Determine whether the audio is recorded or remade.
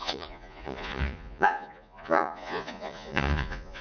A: remade